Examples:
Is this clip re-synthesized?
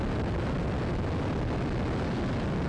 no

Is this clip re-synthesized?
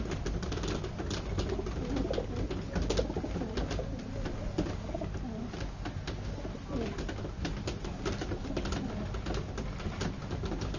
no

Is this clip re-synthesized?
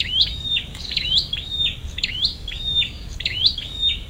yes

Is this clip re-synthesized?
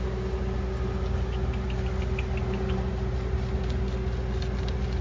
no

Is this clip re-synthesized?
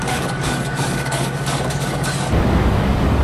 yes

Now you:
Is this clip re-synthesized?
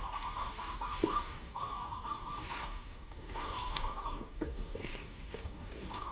yes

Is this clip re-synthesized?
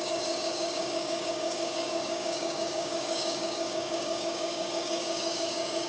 yes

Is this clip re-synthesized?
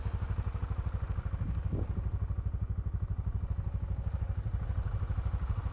no